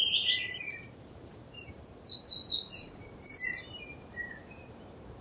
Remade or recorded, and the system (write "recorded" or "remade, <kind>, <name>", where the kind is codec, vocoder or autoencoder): remade, vocoder, BigVGAN v2